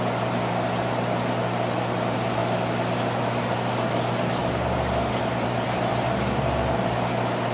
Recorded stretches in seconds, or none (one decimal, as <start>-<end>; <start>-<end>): 0.0-7.5